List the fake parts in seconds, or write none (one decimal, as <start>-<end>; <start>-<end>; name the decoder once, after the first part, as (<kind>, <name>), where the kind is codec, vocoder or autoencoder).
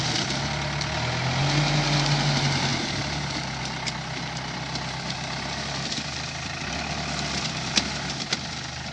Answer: none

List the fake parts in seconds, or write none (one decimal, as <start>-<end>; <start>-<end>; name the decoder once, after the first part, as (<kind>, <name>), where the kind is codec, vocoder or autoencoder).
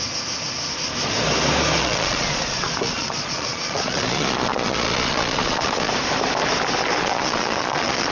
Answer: 1.8-5.9 (vocoder, Vocos); 7.0-8.1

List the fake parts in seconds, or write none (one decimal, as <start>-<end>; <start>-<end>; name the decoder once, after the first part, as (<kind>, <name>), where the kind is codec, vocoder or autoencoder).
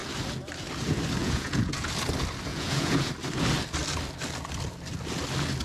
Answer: 1.2-1.9 (vocoder, Vocos); 2.5-3.1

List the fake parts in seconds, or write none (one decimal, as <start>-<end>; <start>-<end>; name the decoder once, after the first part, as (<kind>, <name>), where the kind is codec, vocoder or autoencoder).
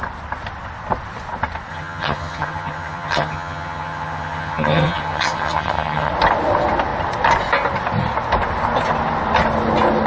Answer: 1.7-6.1 (vocoder, HiFi-GAN)